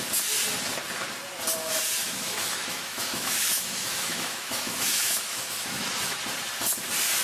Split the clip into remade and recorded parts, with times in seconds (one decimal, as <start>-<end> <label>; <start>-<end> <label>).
0.0-2.0 recorded; 2.0-6.2 remade; 6.2-7.2 recorded